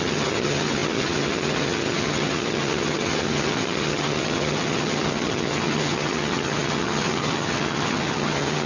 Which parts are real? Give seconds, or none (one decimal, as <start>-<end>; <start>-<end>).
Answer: none